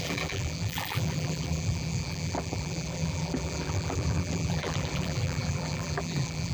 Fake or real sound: fake